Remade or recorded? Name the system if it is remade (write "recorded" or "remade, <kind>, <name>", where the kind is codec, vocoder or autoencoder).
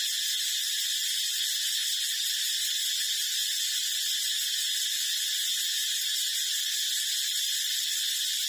recorded